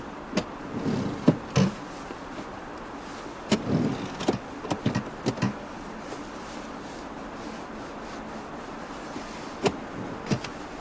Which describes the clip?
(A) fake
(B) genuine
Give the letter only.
B